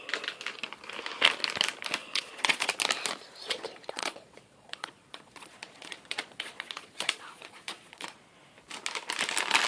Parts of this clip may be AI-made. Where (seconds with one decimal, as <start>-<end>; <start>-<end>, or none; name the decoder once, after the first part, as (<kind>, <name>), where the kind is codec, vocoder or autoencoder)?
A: 2.0-2.7 (vocoder, Vocos); 3.4-8.4